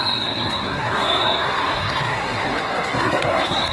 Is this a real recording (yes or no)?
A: no